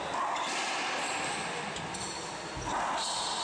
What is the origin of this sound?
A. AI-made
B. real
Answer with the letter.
B